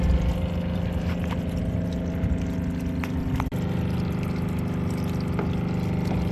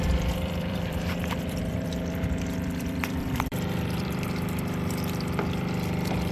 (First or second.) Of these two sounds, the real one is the first